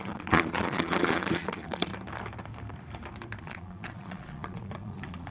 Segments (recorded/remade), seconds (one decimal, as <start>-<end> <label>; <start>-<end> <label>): 0.0-1.9 remade; 1.9-3.4 recorded; 3.4-5.3 remade